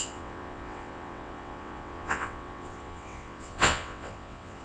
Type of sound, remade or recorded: remade